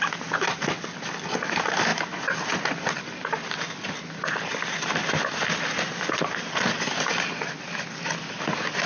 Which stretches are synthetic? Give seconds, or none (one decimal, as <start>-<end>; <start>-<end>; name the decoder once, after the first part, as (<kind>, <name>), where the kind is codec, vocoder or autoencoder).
none